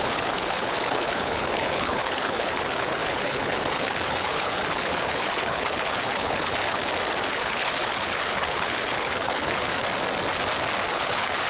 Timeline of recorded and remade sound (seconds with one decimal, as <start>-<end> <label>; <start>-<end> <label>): 0.0-6.8 remade; 6.8-7.3 recorded; 7.3-9.7 remade; 9.7-10.9 recorded; 10.9-11.5 remade